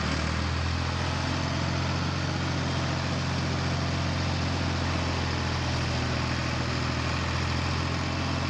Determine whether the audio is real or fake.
real